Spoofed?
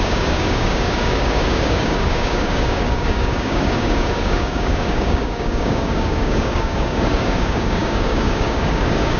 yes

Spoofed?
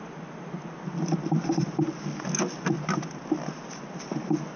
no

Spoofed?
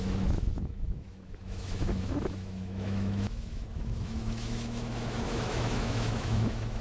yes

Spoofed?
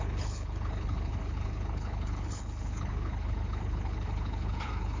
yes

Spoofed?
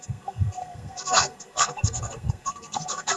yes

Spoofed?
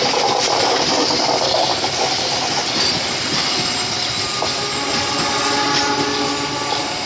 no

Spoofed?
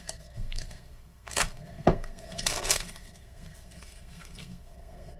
yes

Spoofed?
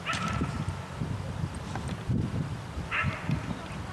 yes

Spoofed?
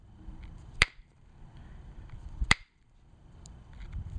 yes